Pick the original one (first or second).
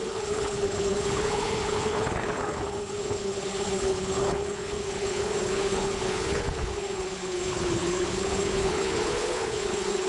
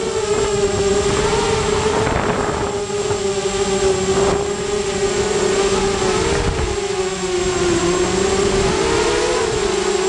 second